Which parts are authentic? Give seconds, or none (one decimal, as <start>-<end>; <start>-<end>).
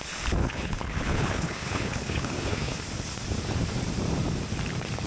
0.0-0.4; 2.8-5.1